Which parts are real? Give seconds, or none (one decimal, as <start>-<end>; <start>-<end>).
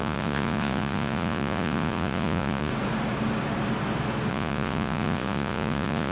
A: 2.7-4.3